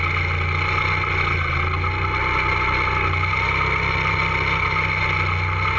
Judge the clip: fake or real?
real